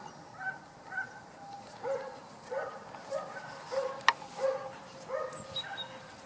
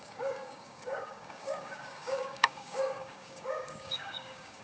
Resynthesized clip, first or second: second